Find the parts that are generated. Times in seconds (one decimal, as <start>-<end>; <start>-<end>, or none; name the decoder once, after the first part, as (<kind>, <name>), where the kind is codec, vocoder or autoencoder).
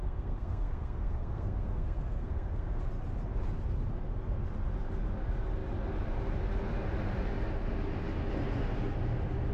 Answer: 0.0-2.8 (codec, SNAC)